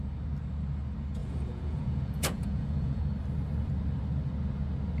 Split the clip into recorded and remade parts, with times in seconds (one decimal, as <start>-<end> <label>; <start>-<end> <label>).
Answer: 0.0-1.2 recorded; 1.2-3.0 remade; 3.0-5.0 recorded